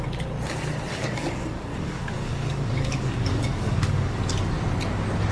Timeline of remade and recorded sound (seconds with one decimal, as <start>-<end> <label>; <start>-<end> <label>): 0.0-1.0 recorded; 1.0-4.2 remade; 4.2-5.3 recorded

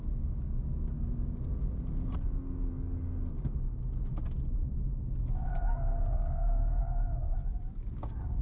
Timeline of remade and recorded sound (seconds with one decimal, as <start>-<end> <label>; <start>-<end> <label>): 0.0-5.9 recorded; 5.9-6.8 remade; 6.8-8.4 recorded

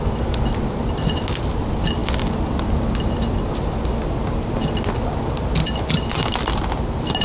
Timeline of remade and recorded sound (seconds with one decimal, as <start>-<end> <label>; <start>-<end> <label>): 0.0-7.2 recorded